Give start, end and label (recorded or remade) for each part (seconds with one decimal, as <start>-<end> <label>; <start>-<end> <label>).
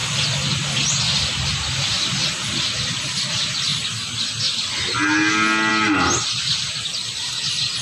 0.0-7.8 recorded